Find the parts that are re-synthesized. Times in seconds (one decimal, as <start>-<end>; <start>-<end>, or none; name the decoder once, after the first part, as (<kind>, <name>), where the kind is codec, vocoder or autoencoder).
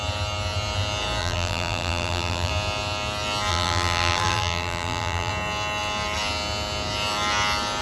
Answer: 1.2-2.5 (vocoder, BigVGAN v2); 3.5-5.3